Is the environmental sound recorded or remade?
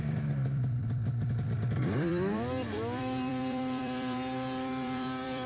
remade